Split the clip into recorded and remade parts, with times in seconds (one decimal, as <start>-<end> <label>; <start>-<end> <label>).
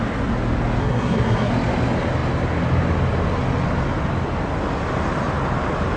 0.0-0.8 recorded; 0.8-1.5 remade; 1.5-6.0 recorded